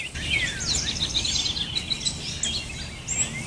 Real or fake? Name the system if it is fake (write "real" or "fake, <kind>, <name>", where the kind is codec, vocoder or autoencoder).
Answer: real